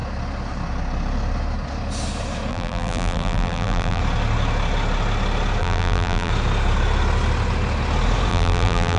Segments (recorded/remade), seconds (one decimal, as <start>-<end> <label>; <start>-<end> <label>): 0.0-2.5 recorded; 2.5-4.0 remade; 4.0-5.6 recorded; 5.6-6.3 remade; 6.3-8.3 recorded; 8.3-9.0 remade